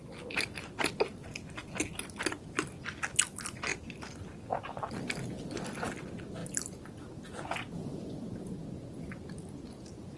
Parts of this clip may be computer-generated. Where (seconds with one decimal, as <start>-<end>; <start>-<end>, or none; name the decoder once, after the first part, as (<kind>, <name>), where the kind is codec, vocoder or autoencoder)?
none